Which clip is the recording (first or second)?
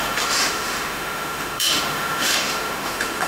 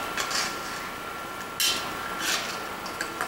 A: second